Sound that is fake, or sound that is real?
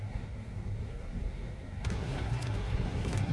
fake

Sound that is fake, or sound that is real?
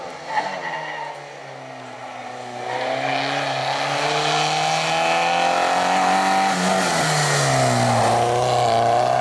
real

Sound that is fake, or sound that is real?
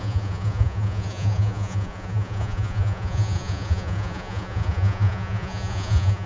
fake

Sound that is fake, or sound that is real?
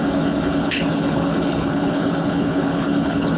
fake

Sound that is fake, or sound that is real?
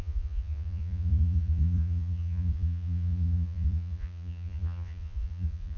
fake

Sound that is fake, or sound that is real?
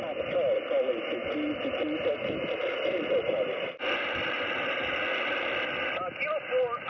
real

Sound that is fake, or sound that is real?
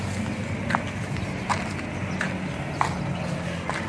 real